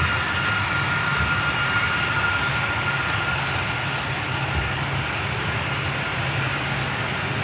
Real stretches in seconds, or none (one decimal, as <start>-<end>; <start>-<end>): 0.0-6.1; 6.7-7.4